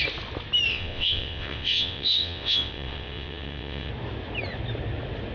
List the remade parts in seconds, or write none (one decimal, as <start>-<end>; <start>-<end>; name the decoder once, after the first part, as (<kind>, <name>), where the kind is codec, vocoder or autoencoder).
0.7-3.9 (vocoder, WaveNeXt)